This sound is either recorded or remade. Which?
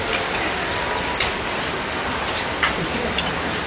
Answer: recorded